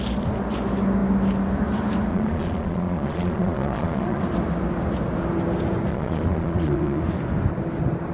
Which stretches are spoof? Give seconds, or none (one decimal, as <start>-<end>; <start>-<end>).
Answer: 2.1-4.2; 5.9-7.0